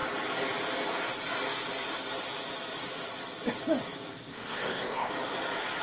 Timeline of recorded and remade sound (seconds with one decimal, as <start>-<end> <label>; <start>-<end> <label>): 0.0-4.3 recorded; 4.3-5.1 remade; 5.1-5.8 recorded